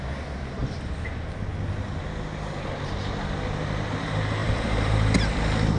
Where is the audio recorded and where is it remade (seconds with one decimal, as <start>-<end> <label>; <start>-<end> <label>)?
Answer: 0.0-0.6 recorded; 0.6-1.2 remade; 1.2-4.4 recorded; 4.4-5.8 remade